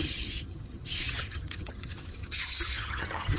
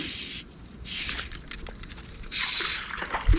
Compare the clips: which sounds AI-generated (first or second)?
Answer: first